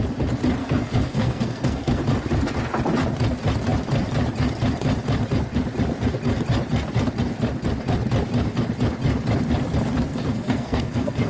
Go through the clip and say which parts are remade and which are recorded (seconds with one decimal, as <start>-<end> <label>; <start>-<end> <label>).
0.0-0.6 recorded; 0.6-2.0 remade; 2.0-10.1 recorded; 10.1-11.3 remade

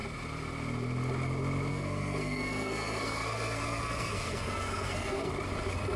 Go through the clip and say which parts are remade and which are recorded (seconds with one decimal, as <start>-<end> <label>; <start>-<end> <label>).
0.0-1.7 recorded; 1.7-5.3 remade; 5.3-6.0 recorded

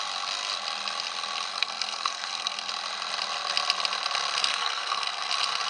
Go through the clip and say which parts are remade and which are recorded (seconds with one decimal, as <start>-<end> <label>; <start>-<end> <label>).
0.0-1.5 recorded; 1.5-2.7 remade; 2.7-4.4 recorded; 4.4-5.3 remade; 5.3-5.7 recorded

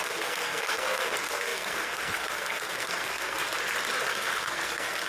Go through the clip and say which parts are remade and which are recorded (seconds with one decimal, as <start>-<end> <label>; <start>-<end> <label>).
0.0-3.4 remade; 3.4-4.0 recorded; 4.0-5.1 remade

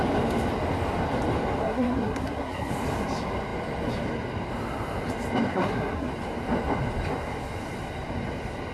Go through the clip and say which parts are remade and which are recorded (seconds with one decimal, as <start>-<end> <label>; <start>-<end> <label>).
0.0-1.6 recorded; 1.6-2.7 remade; 2.7-5.5 recorded; 5.5-6.1 remade; 6.1-8.7 recorded

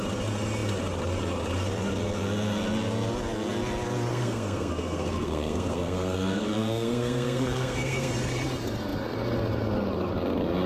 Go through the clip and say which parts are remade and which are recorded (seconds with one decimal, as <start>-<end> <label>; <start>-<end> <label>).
0.0-4.1 recorded; 4.1-8.1 remade; 8.1-10.7 recorded

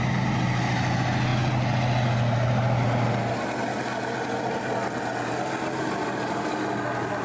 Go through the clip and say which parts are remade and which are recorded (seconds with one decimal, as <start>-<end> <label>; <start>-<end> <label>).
0.0-7.2 recorded